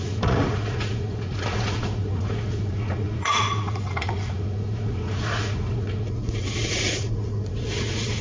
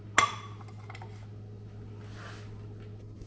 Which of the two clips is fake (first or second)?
first